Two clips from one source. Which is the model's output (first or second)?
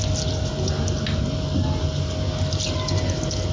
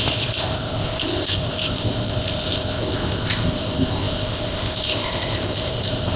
second